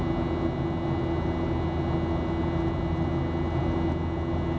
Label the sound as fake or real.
real